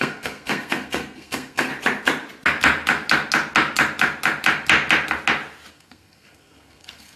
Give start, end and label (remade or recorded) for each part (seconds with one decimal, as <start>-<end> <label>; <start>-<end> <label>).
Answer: 0.0-1.7 remade; 1.7-5.7 recorded; 5.7-7.2 remade